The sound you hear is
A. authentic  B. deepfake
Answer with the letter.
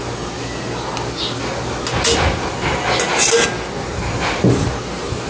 A